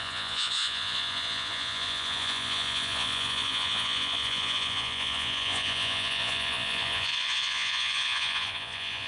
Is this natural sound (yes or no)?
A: no